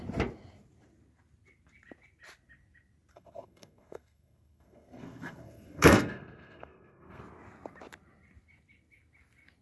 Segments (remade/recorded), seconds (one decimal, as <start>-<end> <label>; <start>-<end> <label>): 0.0-3.1 recorded; 3.1-7.2 remade; 7.2-9.6 recorded